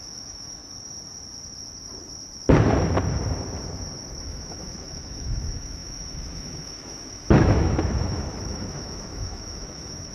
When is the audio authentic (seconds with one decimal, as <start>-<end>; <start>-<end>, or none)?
0.6-4.2